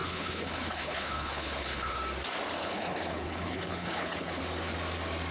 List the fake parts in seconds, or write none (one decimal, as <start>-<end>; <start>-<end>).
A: 0.0-2.0; 2.6-4.4